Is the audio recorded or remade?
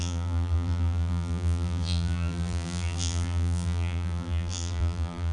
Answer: remade